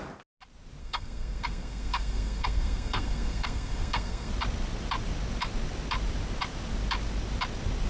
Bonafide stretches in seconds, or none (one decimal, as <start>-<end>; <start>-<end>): 0.0-0.8; 4.3-7.9